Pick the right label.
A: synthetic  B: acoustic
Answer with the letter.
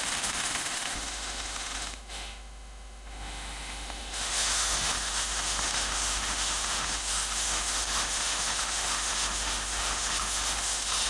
A